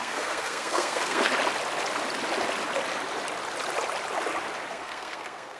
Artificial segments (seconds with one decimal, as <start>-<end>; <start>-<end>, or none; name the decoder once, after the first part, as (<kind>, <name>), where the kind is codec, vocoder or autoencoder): 0.0-1.3 (codec, SNAC); 4.7-5.6